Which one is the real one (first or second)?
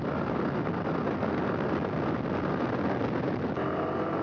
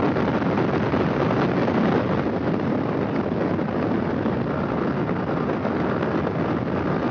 first